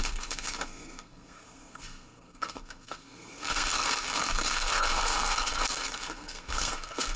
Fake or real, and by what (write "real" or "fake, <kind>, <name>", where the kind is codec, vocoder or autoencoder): fake, codec, SNAC